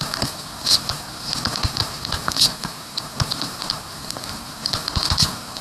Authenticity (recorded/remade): remade